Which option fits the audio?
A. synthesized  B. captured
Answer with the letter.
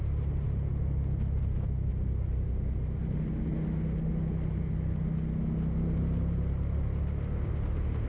B